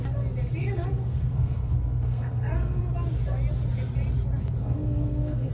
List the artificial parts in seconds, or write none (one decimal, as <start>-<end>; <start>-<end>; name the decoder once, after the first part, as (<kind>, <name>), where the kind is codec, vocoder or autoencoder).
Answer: 0.6-2.8 (codec, SNAC); 4.6-5.5